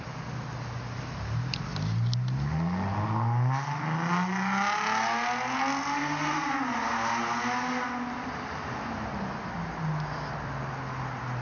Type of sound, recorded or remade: recorded